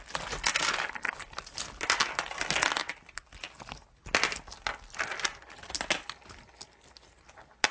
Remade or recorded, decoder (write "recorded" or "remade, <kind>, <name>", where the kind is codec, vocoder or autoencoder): recorded